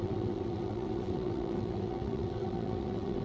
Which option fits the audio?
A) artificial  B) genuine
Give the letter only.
A